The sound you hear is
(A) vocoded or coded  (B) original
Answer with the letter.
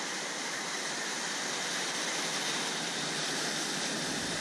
A